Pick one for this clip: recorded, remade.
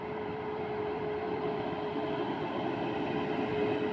remade